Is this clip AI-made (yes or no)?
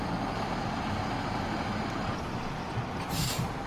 no